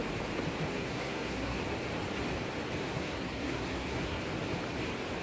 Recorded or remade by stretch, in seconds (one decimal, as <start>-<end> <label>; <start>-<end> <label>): 0.0-0.7 recorded; 0.7-1.6 remade; 1.6-2.8 recorded; 2.8-4.2 remade; 4.2-5.2 recorded